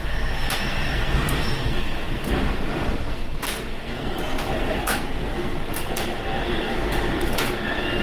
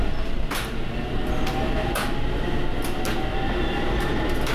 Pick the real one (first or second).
second